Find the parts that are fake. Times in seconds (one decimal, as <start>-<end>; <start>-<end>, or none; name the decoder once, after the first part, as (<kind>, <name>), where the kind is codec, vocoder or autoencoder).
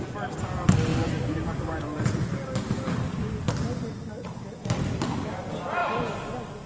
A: 5.8-6.7 (vocoder, BigVGAN v2)